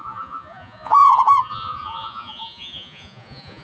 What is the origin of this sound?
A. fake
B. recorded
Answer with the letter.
A